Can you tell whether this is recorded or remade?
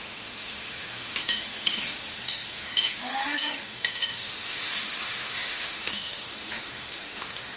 remade